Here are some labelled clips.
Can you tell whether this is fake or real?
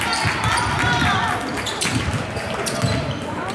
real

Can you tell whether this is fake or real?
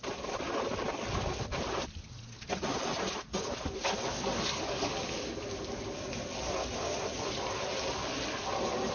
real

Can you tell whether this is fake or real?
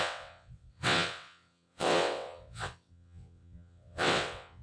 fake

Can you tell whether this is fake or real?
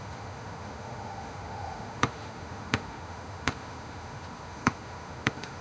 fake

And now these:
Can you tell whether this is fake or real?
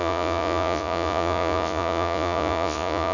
fake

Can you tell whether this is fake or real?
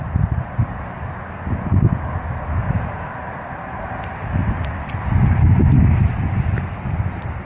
real